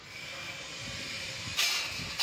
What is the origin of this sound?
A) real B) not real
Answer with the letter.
A